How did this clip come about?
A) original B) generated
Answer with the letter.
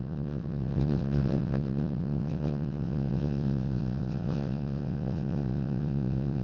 B